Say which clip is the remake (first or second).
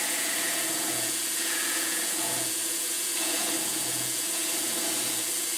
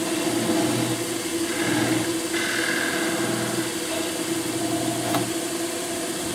first